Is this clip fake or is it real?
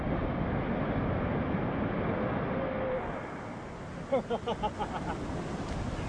real